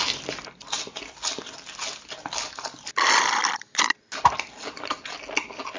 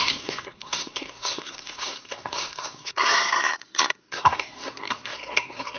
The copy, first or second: second